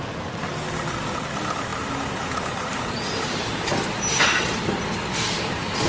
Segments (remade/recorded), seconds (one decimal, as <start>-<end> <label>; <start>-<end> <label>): 0.0-5.9 recorded